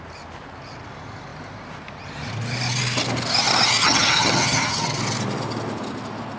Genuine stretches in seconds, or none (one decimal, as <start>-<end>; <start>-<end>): 0.0-3.8; 5.0-6.4